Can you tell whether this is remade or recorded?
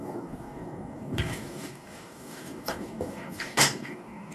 remade